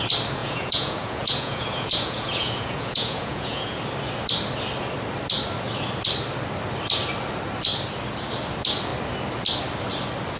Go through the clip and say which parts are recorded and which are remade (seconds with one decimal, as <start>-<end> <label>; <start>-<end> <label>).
0.0-0.4 recorded; 0.4-3.8 remade; 3.8-10.4 recorded